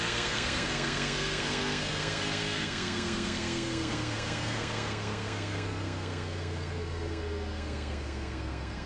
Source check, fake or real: fake